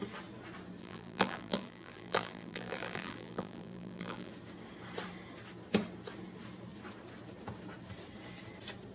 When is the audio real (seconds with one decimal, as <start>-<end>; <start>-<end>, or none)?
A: 0.0-0.8; 4.3-8.9